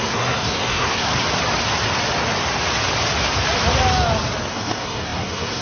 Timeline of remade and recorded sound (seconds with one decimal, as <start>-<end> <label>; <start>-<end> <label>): 0.0-1.1 remade; 1.1-4.5 recorded; 4.5-5.6 remade